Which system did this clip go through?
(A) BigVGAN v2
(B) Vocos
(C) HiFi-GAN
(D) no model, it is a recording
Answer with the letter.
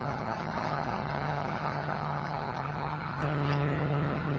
C